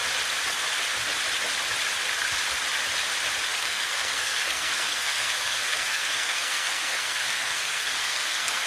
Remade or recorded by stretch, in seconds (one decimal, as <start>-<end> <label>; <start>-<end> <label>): 0.0-3.6 recorded; 3.6-8.7 remade